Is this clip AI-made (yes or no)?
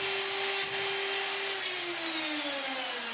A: no